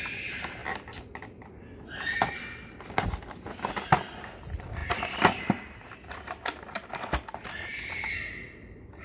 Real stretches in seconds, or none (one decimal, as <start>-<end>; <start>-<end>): 0.0-9.0